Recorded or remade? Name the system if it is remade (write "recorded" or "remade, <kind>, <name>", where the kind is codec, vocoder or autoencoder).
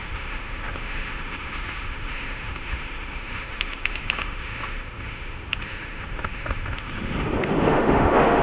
remade, autoencoder, DAC-VAE